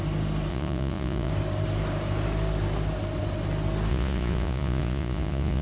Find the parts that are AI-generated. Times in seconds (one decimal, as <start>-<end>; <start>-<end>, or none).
0.5-1.3; 3.9-5.6